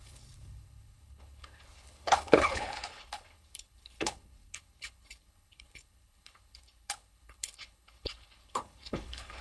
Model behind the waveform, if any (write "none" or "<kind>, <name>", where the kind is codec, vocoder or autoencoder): codec, HILCodec